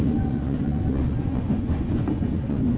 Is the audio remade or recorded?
remade